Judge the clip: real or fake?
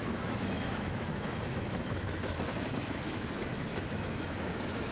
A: fake